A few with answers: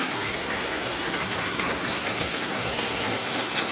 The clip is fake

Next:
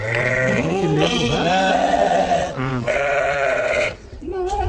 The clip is fake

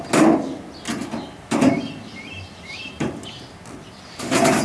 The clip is real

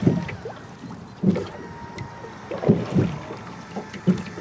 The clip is real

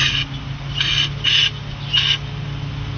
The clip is real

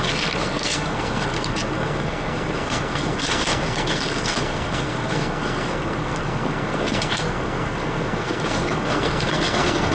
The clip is fake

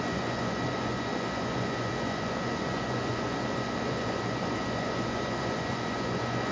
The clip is fake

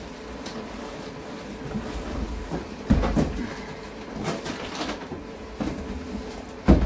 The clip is fake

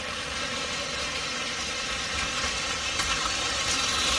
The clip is real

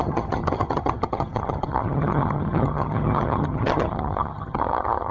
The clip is fake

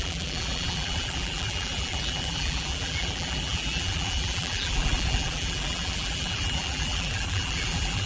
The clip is fake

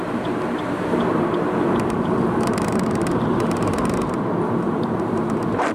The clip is fake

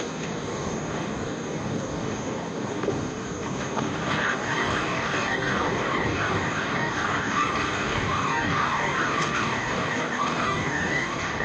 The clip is fake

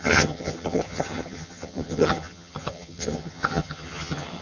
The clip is fake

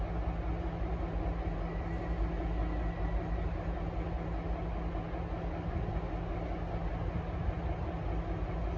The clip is real